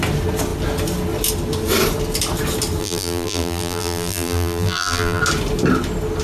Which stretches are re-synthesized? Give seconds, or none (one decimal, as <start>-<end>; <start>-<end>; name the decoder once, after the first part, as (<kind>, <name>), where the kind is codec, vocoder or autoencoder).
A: 2.8-5.2 (vocoder, BigVGAN v2)